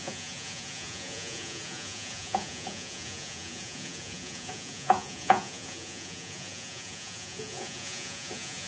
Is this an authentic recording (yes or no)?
no